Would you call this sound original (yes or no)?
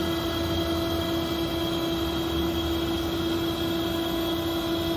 yes